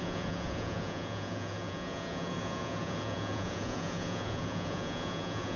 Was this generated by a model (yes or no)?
yes